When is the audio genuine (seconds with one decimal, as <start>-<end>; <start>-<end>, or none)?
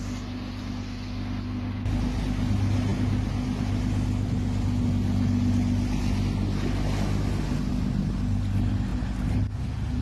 0.0-10.0